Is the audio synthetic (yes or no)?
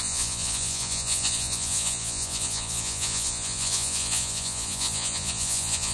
yes